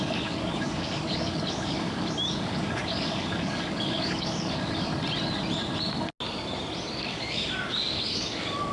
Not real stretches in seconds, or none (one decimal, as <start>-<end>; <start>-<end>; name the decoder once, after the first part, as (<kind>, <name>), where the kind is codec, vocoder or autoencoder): 0.0-4.9 (codec, DAC); 6.9-8.7